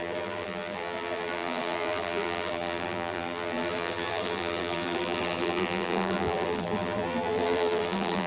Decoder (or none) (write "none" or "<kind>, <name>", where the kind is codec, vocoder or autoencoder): vocoder, BigVGAN v2